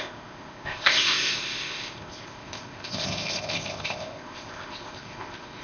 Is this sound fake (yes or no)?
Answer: yes